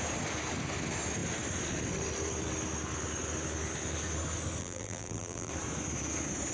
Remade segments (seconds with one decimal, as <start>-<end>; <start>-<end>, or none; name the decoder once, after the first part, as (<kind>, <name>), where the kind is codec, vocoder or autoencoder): 4.6-5.5 (vocoder, BigVGAN v2)